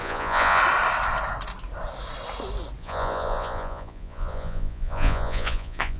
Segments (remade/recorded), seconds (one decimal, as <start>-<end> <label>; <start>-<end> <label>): 0.0-0.6 remade; 0.6-2.8 recorded; 2.8-6.0 remade